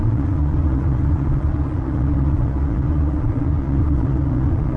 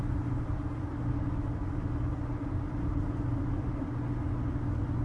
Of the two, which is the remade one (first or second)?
first